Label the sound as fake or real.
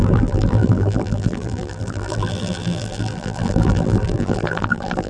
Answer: fake